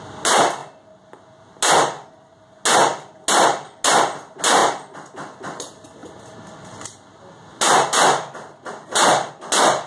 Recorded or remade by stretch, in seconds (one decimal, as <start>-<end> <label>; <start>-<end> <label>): 0.0-9.9 recorded